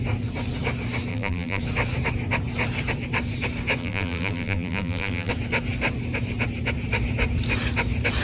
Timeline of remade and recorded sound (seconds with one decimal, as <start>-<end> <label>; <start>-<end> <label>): 0.0-1.1 recorded; 1.1-1.6 remade; 1.6-3.8 recorded; 3.8-5.3 remade; 5.3-8.2 recorded